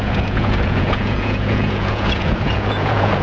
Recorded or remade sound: remade